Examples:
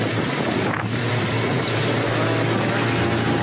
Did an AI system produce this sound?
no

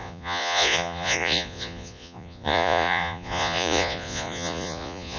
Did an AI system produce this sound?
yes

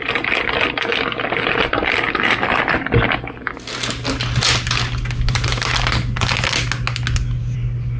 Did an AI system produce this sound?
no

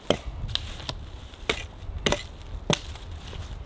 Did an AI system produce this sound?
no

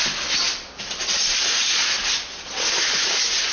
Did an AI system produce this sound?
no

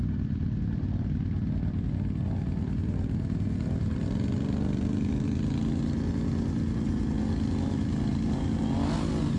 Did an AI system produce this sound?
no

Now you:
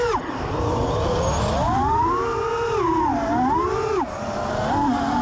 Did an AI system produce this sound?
no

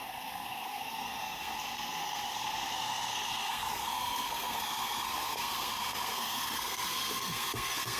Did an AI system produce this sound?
yes